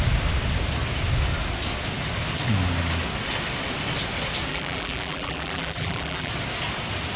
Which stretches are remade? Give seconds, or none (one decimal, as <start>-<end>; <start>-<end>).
4.5-6.3